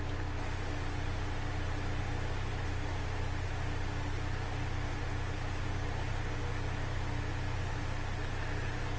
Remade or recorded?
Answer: recorded